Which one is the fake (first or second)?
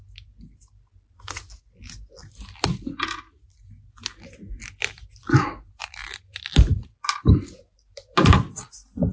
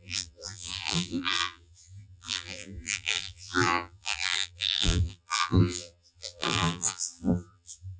second